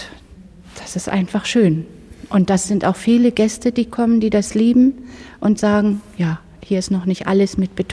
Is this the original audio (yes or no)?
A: yes